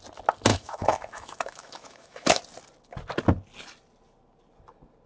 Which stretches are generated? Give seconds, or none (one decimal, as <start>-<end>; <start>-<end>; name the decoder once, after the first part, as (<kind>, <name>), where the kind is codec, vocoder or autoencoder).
0.5-2.4 (autoencoder, DAC-VAE)